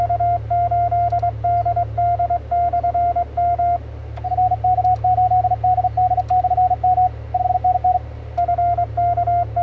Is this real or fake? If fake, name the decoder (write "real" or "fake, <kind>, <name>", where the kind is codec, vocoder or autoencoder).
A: real